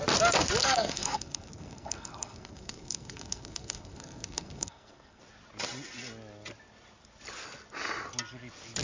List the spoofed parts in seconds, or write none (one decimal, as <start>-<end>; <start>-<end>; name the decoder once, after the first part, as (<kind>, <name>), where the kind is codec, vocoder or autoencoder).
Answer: 0.6-5.2 (codec, SNAC)